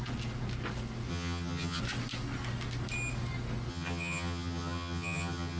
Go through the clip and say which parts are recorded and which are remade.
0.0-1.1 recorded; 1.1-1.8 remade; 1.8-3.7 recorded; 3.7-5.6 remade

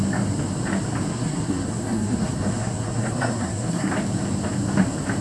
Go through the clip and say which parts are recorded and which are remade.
0.0-1.1 recorded; 1.1-3.9 remade; 3.9-5.2 recorded

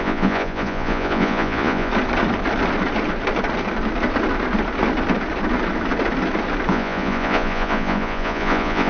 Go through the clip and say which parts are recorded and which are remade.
0.0-1.9 remade; 1.9-6.7 recorded; 6.7-8.9 remade

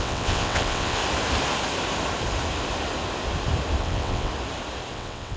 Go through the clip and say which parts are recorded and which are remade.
0.0-1.0 remade; 1.0-3.8 recorded; 3.8-4.3 remade; 4.3-4.9 recorded; 4.9-5.4 remade